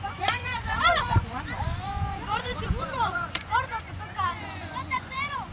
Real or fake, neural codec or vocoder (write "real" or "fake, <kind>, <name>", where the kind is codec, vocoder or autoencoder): fake, vocoder, Vocos